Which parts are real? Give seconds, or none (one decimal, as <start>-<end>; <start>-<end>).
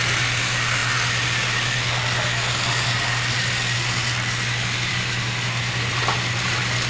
0.0-6.9